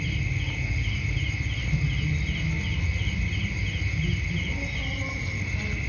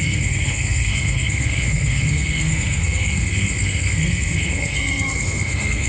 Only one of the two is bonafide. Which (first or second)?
first